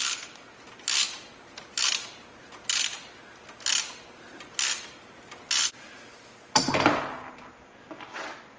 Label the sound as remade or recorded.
recorded